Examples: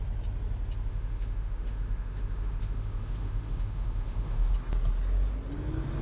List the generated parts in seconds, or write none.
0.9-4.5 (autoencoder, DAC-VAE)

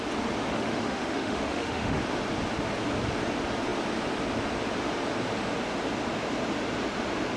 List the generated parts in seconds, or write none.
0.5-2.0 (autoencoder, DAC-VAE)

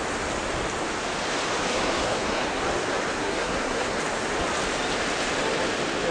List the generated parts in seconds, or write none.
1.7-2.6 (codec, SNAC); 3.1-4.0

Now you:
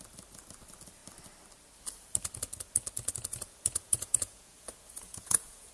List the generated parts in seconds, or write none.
3.3-5.7 (vocoder, Vocos)